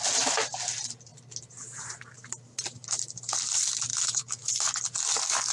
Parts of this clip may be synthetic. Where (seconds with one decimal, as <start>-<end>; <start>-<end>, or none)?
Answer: 3.9-4.5